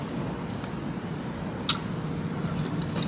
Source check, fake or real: real